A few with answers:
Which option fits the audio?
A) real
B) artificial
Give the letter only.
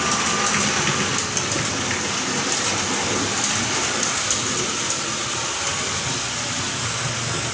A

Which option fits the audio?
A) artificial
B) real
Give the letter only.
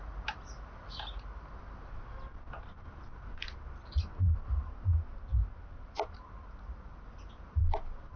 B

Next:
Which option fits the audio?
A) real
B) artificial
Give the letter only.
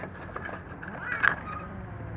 A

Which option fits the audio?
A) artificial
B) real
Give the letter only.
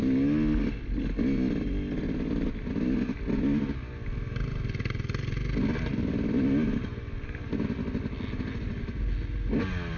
B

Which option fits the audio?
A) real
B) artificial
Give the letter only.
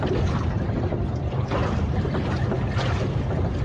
A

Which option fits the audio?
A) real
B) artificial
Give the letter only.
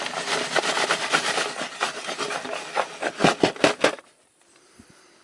A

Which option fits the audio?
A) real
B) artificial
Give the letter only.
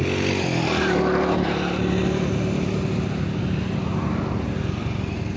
A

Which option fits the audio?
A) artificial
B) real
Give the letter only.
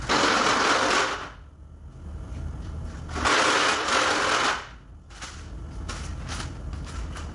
B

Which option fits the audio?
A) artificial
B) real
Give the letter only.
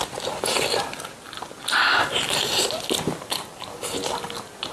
B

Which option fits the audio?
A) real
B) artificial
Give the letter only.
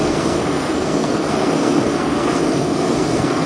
B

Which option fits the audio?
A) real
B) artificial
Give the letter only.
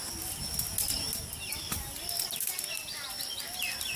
A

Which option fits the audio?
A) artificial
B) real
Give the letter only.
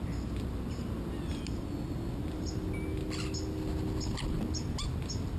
B